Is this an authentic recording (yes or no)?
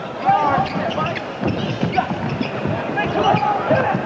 yes